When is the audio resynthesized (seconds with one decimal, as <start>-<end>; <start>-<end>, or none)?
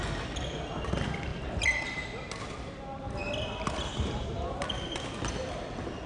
none